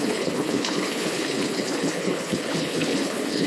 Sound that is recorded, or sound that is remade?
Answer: remade